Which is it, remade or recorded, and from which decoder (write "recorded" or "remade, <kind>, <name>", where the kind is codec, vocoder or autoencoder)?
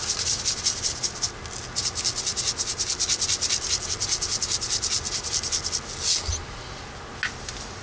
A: recorded